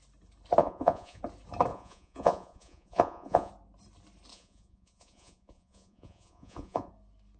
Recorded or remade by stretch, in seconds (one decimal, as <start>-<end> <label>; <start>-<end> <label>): 0.0-0.6 recorded; 0.6-1.2 remade; 1.2-1.7 recorded; 1.7-3.5 remade; 3.5-4.3 recorded; 4.3-6.9 remade; 6.9-7.4 recorded